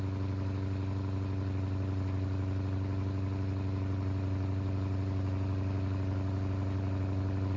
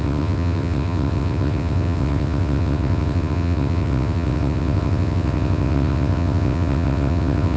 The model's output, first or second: second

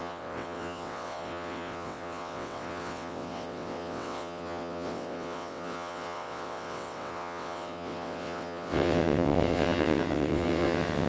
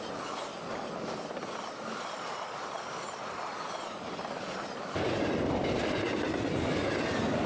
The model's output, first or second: first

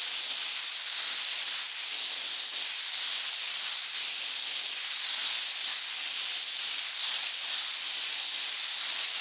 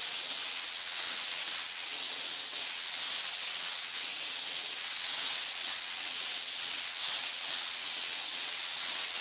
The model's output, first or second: second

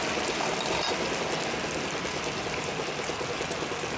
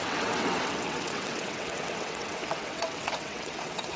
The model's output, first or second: second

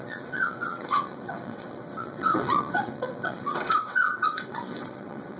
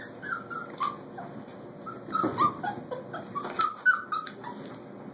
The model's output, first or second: first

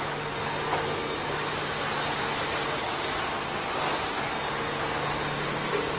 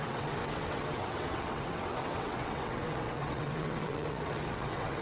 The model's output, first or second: second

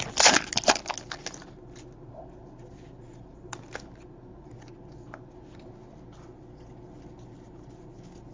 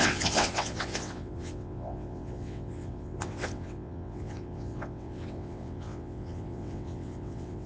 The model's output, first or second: second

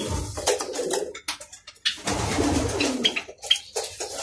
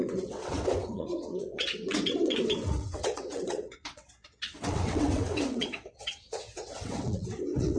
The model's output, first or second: second